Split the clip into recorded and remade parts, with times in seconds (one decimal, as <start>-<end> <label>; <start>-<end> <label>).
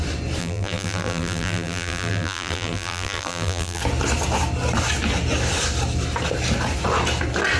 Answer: 0.0-0.4 recorded; 0.4-3.8 remade; 3.8-7.6 recorded